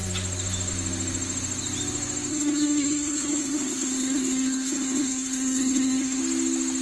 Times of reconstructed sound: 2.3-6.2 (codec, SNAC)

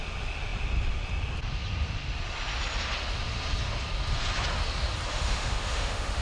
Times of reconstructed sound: 5.1-6.2 (autoencoder, DAC-VAE)

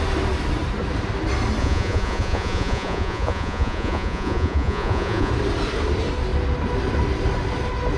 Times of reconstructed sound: 1.6-5.3 (vocoder, Vocos)

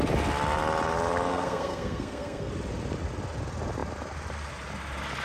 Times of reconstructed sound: 1.3-2.5 (codec, SNAC)